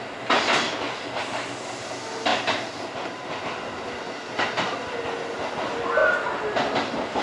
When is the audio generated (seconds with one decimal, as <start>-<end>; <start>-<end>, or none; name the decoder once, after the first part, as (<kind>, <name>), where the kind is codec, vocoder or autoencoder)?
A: none